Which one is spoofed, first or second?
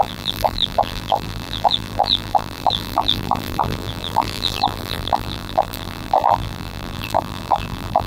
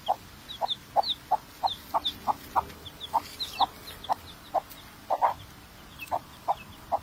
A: first